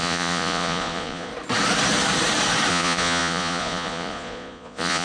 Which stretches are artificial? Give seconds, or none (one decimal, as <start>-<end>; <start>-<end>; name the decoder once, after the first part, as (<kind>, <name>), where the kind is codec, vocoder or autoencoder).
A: 0.0-1.3 (vocoder, Vocos); 2.7-5.0